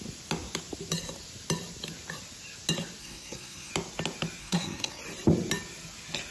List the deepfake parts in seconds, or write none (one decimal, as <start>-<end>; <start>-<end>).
3.0-3.7; 4.4-5.0